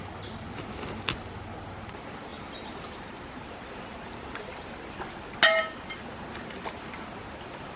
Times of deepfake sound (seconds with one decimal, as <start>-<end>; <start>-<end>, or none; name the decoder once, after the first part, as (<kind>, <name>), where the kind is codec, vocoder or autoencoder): none